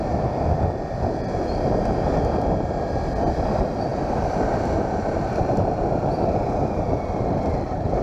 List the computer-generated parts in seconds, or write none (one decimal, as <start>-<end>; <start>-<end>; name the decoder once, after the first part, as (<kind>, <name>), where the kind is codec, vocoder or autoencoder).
none